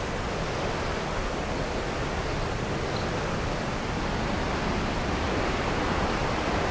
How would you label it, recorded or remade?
recorded